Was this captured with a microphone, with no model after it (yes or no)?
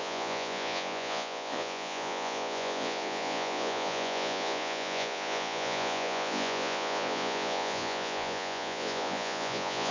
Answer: no